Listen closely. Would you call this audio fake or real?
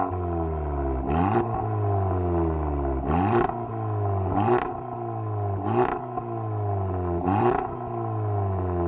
real